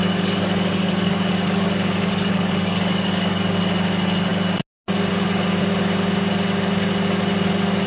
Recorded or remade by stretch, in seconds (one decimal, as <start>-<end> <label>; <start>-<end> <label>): 0.0-3.6 remade; 3.6-7.9 recorded